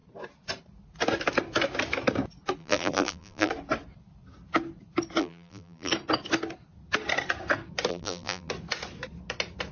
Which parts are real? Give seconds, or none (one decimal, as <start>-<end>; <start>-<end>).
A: 0.0-2.6; 3.5-5.2; 5.9-7.9; 8.5-9.7